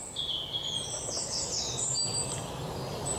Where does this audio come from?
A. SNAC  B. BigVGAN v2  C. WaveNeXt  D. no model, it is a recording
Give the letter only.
D